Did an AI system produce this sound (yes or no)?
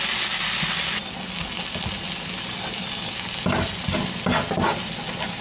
no